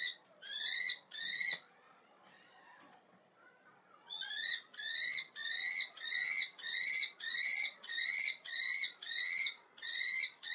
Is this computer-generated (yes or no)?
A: yes